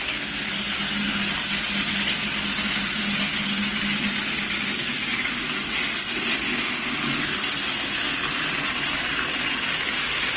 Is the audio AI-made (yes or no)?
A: no